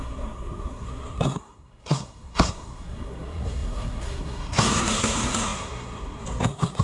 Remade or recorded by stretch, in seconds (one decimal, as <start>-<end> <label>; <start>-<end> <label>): 0.0-6.8 remade